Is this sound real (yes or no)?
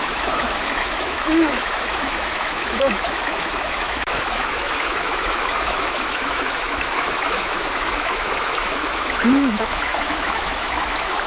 no